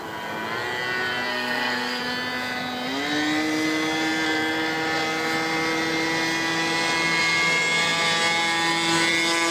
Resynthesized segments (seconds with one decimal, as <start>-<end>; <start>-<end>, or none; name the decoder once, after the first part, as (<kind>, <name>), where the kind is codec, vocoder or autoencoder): 1.3-2.0 (codec, SNAC)